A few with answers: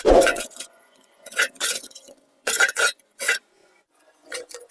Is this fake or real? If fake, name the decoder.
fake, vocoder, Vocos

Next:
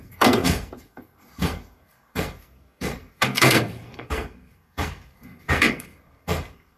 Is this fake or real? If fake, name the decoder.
fake, codec, SNAC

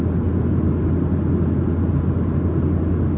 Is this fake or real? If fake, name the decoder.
real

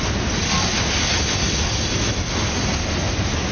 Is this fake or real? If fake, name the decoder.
real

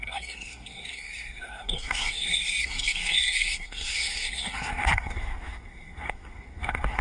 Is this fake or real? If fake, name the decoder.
fake, codec, SNAC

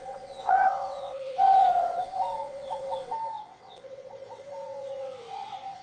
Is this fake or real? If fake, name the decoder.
fake, vocoder, WaveNeXt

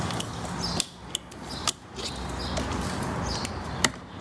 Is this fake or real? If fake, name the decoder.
real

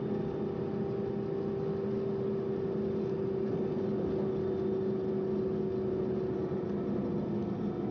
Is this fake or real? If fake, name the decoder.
real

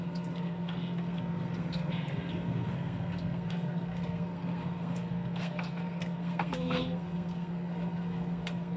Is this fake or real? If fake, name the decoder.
fake, codec, SNAC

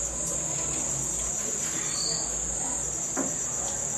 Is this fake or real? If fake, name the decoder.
real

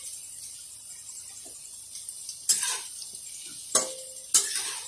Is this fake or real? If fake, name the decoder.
real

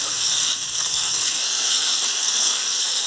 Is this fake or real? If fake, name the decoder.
fake, codec, SNAC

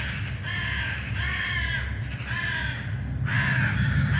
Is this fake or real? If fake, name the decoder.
real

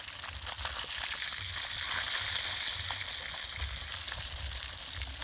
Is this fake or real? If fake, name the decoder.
real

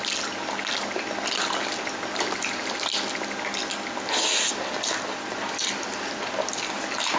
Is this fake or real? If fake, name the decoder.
real